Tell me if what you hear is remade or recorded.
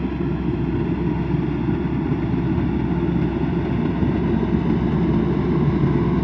recorded